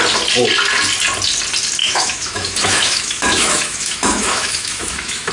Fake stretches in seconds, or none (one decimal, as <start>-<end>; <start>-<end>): 1.8-5.3